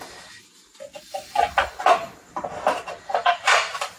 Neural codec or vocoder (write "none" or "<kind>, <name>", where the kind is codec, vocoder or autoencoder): vocoder, BigVGAN v2